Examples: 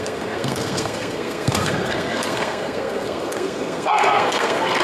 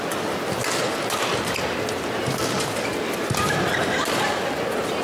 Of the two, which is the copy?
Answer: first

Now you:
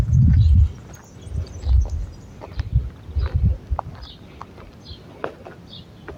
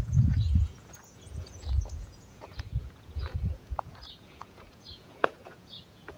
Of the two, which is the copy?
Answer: second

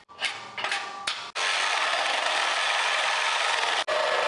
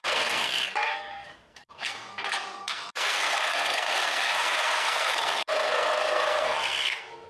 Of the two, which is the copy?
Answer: second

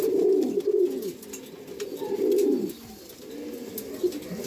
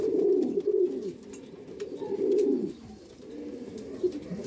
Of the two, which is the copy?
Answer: second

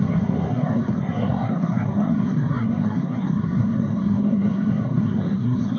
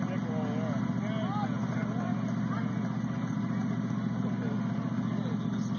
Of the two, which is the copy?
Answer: first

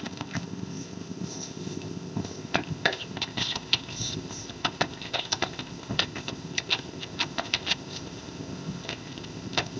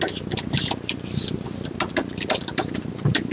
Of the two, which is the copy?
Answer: first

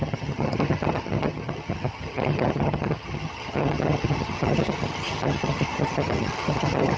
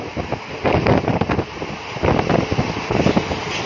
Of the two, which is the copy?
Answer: first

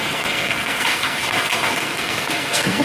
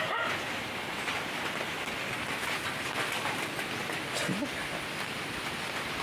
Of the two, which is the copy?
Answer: first